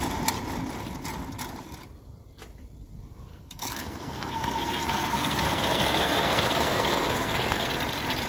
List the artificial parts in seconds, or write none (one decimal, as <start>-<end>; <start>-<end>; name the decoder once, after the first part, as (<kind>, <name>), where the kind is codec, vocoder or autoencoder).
3.3-7.7 (codec, SNAC)